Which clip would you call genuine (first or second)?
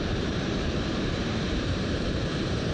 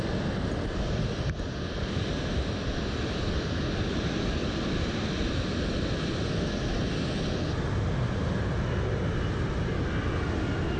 second